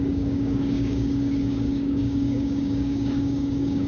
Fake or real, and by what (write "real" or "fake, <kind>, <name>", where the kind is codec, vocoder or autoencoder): fake, codec, DAC